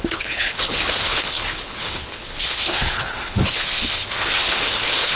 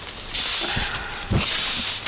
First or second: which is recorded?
second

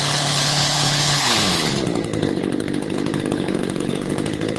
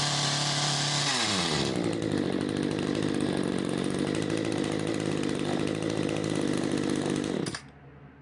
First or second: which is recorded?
second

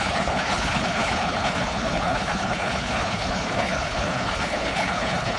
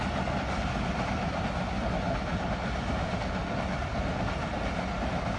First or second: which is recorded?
second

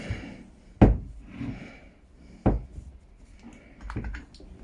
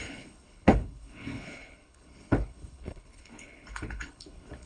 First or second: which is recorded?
first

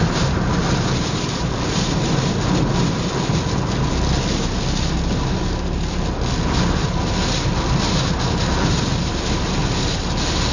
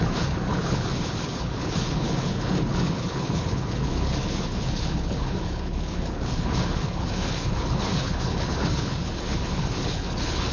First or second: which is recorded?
first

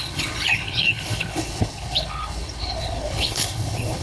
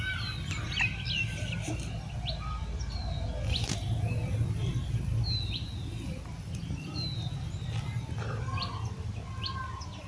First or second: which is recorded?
second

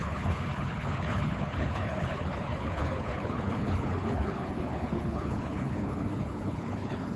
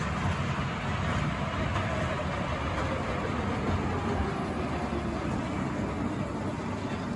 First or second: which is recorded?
second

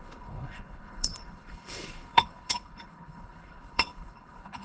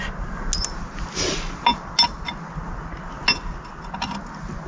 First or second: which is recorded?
second